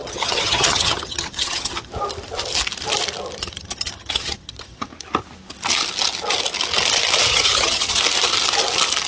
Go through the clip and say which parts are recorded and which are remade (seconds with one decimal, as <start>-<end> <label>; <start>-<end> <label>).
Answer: 0.0-1.9 remade; 1.9-3.4 recorded; 3.4-4.8 remade; 4.8-7.3 recorded; 7.3-8.0 remade; 8.0-9.1 recorded